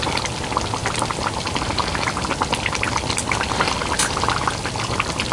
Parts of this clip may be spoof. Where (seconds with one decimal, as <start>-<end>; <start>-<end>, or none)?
none